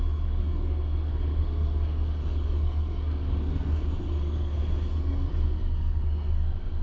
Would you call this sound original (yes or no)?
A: no